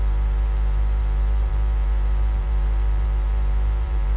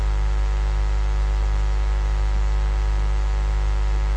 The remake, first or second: first